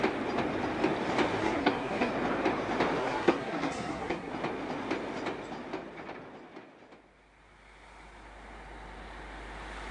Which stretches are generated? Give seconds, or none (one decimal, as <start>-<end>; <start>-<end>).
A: 1.4-2.1; 3.0-4.3